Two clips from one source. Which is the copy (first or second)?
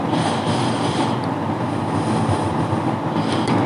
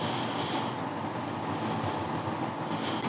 first